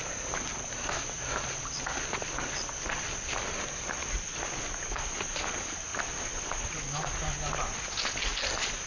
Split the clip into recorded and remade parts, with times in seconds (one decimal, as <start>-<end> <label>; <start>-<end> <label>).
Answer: 0.0-8.9 recorded